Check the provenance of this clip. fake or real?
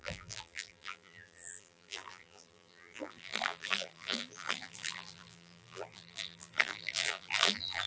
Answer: fake